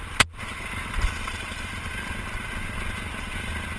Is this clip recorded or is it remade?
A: recorded